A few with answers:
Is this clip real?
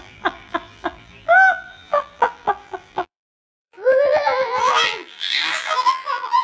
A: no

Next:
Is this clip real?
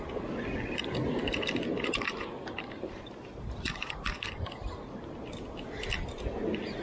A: yes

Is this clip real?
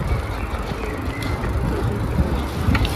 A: yes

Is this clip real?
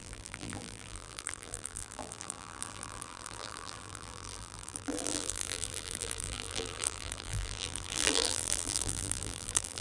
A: no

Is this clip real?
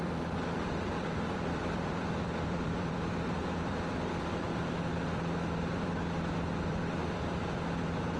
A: no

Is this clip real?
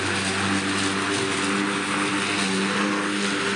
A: yes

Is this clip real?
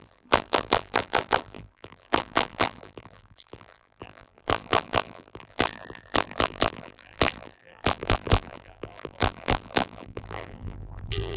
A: no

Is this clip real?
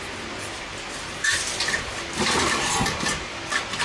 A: no